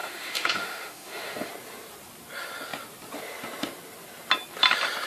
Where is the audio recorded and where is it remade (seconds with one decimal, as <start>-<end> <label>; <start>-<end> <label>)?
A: 0.0-1.5 remade; 1.5-5.1 recorded